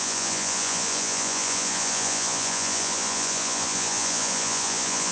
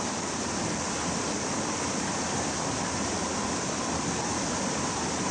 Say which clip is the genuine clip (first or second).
second